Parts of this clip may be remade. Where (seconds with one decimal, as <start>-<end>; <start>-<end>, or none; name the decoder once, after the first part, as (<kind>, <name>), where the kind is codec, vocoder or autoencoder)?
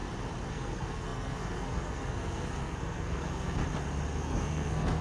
0.5-3.6 (codec, SNAC); 4.2-5.0